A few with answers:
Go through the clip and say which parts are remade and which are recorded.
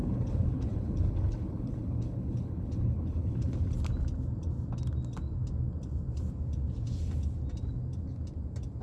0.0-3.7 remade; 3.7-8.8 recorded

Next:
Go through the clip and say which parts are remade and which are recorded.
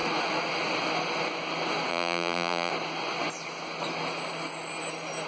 0.0-1.9 recorded; 1.9-2.7 remade; 2.7-5.3 recorded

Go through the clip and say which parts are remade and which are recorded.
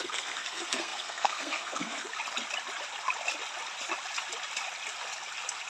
0.0-2.1 remade; 2.1-5.7 recorded